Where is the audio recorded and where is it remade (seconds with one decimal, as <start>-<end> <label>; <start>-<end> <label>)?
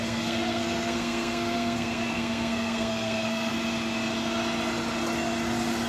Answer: 0.0-3.5 remade; 3.5-5.9 recorded